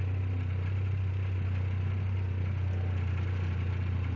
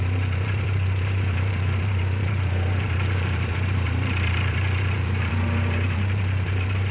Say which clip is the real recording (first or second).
first